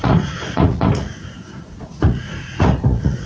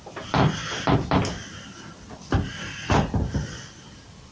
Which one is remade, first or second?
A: first